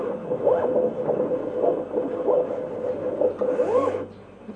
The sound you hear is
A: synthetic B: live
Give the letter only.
B